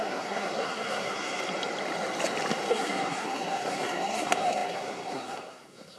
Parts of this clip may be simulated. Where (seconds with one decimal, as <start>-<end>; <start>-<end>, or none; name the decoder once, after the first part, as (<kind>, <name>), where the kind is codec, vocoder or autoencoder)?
0.0-1.4 (codec, SNAC); 2.7-6.0

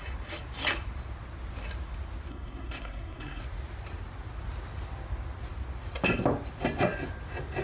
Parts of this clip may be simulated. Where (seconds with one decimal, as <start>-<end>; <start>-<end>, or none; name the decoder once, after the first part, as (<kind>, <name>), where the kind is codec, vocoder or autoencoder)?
2.3-3.4 (codec, SNAC)

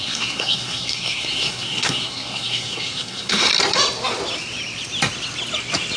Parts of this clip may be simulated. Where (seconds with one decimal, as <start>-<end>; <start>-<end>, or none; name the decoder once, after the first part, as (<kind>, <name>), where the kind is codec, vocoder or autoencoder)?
0.0-3.5 (codec, SNAC)

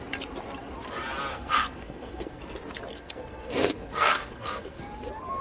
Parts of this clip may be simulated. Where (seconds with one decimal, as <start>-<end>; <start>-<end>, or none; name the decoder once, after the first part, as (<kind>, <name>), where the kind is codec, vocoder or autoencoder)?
1.3-2.4 (codec, SNAC); 2.9-4.8

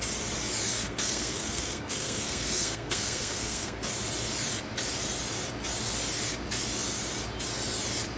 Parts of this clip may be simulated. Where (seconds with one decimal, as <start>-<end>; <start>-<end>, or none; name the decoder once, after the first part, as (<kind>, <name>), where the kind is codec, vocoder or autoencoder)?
0.8-3.9 (codec, SNAC)

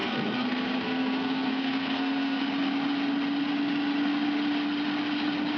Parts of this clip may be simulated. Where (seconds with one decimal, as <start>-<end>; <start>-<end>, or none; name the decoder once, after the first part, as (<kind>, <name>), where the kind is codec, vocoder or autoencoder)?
0.0-2.4 (codec, SNAC)